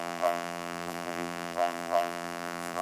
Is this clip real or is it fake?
fake